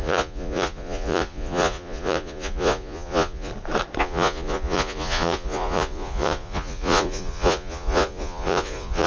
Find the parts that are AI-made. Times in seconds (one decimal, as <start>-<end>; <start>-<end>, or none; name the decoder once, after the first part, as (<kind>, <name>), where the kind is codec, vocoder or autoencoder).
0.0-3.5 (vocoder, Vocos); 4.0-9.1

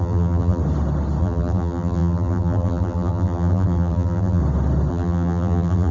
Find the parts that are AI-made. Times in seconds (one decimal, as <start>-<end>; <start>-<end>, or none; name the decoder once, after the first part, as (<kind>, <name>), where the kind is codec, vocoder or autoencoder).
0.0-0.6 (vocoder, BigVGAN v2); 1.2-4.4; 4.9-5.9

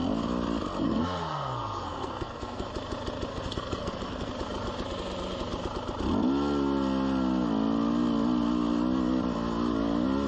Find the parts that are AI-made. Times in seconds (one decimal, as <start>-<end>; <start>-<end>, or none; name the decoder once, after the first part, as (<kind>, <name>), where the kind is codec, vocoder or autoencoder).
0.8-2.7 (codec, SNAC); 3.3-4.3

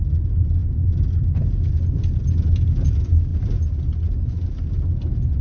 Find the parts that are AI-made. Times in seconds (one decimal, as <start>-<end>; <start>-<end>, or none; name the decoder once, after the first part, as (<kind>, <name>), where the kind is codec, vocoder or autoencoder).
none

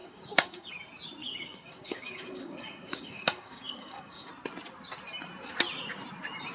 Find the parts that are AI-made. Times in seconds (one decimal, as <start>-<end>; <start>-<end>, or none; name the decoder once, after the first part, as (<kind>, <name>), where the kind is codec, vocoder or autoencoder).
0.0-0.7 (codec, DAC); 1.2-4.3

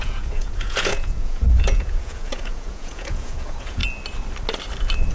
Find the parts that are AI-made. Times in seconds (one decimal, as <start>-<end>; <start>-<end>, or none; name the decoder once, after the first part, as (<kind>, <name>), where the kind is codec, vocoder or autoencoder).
0.0-3.8 (vocoder, Vocos)

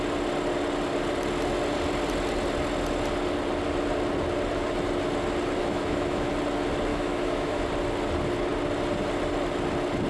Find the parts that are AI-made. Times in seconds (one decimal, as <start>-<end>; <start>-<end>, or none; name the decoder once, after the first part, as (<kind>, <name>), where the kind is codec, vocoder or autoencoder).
5.6-6.3 (autoencoder, DAC-VAE); 6.9-7.6

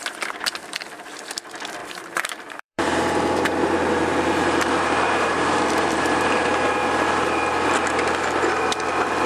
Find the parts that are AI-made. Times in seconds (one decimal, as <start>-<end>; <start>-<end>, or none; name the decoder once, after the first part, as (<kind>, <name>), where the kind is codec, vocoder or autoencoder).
1.8-6.5 (vocoder, BigVGAN v2)